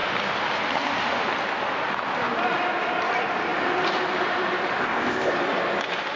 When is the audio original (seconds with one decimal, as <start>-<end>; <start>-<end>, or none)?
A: 0.0-4.8; 5.3-6.2